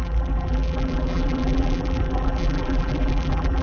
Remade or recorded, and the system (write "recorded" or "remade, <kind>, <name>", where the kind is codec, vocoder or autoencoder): remade, vocoder, BigVGAN v2